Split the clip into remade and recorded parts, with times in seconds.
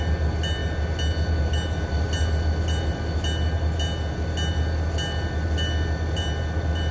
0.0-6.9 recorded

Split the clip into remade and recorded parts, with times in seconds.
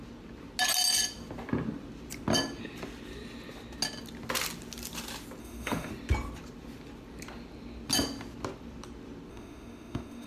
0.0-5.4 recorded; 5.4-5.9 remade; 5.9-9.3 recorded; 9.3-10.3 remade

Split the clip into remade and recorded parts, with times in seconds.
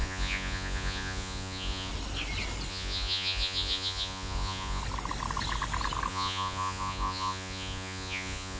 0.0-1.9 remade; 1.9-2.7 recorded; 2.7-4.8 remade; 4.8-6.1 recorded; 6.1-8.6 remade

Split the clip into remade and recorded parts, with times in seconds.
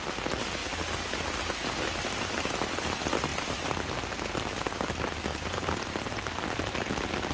0.0-3.3 recorded; 3.3-3.8 remade; 3.8-7.3 recorded